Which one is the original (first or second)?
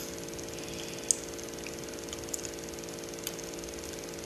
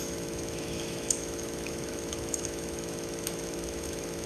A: first